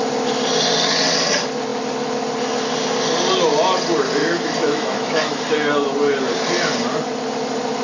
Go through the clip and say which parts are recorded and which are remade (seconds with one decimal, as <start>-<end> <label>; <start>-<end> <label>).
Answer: 0.0-4.2 recorded; 4.2-5.4 remade; 5.4-7.8 recorded